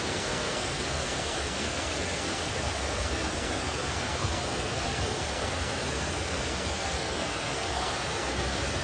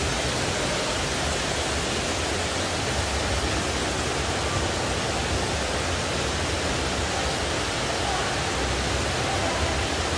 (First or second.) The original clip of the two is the second